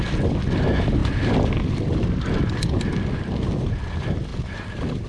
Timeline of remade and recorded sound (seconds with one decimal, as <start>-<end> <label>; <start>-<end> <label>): 0.0-4.3 recorded; 4.3-5.1 remade